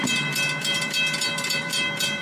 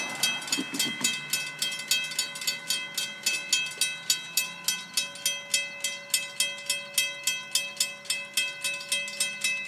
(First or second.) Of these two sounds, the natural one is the second